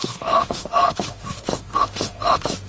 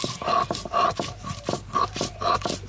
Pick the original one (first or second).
second